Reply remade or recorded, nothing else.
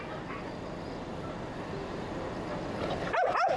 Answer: recorded